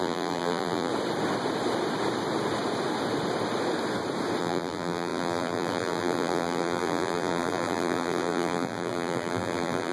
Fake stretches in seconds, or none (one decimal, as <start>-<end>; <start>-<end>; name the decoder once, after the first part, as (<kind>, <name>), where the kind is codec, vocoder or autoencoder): 0.0-0.9 (vocoder, BigVGAN v2); 4.4-9.9